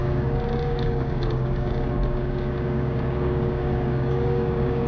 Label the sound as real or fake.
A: fake